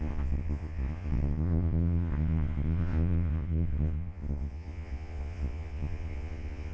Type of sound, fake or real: fake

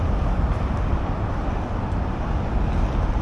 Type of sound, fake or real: real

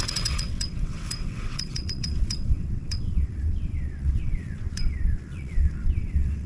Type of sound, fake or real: fake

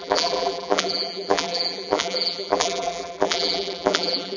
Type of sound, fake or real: fake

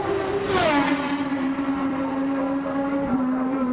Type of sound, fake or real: fake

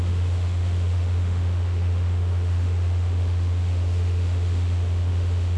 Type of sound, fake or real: fake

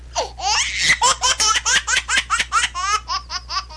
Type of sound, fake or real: real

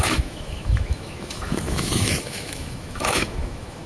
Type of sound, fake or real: fake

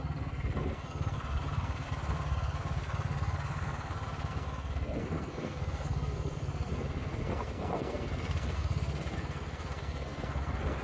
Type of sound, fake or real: fake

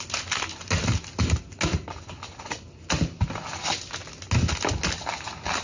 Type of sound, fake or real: real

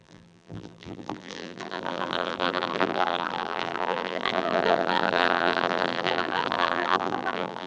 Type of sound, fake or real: fake